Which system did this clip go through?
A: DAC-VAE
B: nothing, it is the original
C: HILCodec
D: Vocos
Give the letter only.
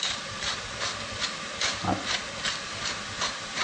B